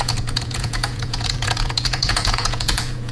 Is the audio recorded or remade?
remade